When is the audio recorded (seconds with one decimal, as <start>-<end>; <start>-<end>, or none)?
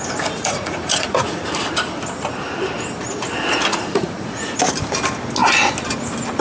0.0-0.4; 1.5-3.7; 4.4-6.4